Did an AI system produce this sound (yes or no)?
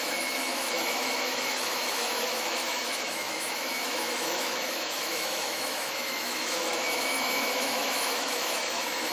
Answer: yes